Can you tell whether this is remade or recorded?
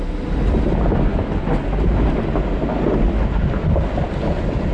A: recorded